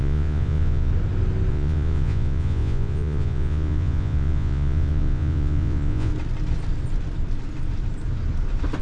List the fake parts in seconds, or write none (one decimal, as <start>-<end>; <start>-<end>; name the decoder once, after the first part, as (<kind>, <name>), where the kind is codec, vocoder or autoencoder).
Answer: 0.0-0.9 (vocoder, Vocos); 1.5-6.1